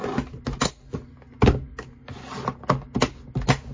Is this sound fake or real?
real